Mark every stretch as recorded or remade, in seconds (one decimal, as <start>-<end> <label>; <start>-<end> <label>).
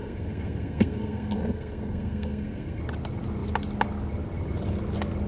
0.0-2.8 remade; 2.8-5.3 recorded